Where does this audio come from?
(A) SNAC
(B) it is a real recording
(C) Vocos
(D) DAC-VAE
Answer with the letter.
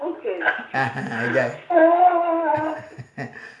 B